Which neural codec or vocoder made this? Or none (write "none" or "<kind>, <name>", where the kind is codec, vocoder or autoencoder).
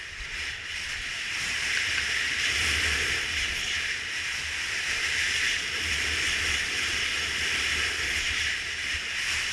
vocoder, BigVGAN v2